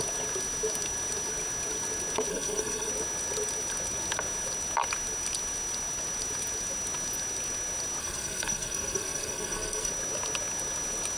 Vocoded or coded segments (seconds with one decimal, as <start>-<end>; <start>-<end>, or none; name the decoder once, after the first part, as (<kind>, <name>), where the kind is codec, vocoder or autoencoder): 2.3-2.9 (codec, SNAC); 8.0-9.9